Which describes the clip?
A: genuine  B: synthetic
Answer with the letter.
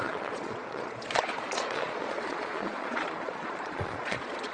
B